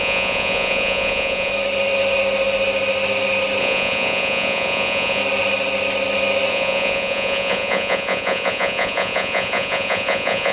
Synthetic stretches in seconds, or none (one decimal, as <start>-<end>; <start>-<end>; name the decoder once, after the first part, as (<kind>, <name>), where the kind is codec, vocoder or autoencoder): 0.0-1.5 (vocoder, Vocos); 3.6-5.2; 6.5-10.5

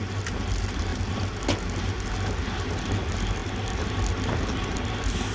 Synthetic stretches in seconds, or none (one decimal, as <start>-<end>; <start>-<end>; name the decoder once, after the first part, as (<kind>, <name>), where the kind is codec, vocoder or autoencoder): none

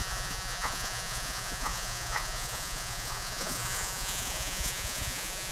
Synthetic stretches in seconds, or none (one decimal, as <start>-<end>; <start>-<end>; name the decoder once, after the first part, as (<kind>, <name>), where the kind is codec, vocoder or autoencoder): 0.0-5.5 (vocoder, Vocos)

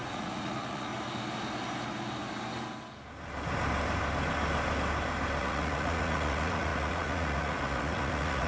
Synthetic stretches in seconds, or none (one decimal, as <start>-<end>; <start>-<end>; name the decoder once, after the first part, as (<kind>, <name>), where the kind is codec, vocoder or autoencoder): 0.0-0.9 (vocoder, Vocos); 5.4-8.5

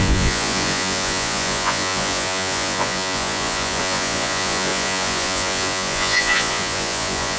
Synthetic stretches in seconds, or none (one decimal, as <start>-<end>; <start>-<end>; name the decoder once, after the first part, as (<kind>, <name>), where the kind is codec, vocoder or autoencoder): 0.0-7.4 (vocoder, Vocos)

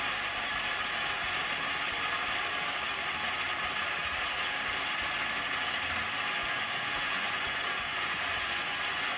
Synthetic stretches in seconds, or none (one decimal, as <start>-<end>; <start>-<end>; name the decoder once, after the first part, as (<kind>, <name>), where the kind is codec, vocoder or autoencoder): 6.4-9.2 (vocoder, Vocos)